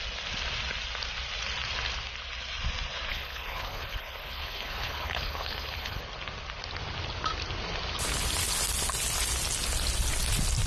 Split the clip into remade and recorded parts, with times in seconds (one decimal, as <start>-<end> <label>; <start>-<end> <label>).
0.0-3.1 recorded; 3.1-6.0 remade; 6.0-10.7 recorded